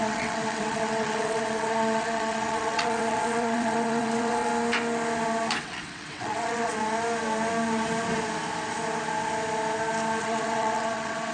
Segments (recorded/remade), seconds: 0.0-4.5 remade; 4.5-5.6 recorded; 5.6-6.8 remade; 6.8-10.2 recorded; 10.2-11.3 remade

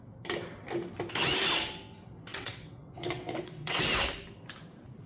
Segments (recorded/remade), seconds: 0.0-2.3 recorded; 2.3-3.8 remade; 3.8-5.1 recorded

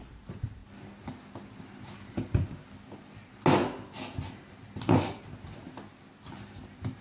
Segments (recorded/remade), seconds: 0.0-7.0 recorded

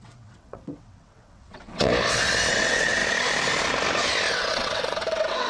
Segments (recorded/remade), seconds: 0.0-1.9 remade; 1.9-2.5 recorded; 2.5-3.0 remade; 3.0-4.3 recorded; 4.3-5.5 remade

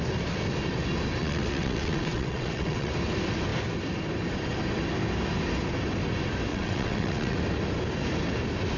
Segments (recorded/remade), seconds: 0.0-1.2 recorded; 1.2-2.9 remade; 2.9-6.5 recorded; 6.5-7.4 remade; 7.4-8.8 recorded